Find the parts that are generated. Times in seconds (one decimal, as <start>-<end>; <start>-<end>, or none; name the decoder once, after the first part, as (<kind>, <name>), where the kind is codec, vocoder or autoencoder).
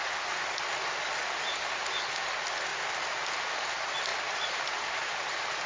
2.7-3.6 (vocoder, BigVGAN v2)